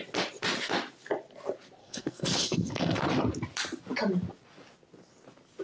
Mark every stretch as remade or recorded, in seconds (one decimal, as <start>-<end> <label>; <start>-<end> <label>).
0.0-1.8 recorded; 1.8-3.0 remade; 3.0-5.6 recorded